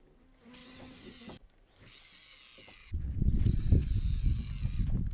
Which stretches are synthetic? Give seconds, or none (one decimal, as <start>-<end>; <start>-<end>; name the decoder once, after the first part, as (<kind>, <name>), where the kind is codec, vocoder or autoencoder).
0.6-1.2 (vocoder, WaveNeXt); 2.8-3.7